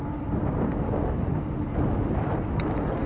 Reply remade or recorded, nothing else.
recorded